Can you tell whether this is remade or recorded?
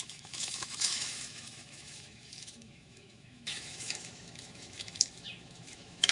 remade